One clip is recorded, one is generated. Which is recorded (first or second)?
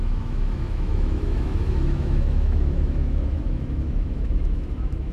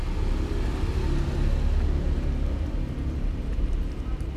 second